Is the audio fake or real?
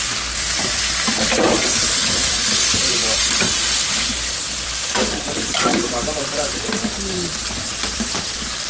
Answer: fake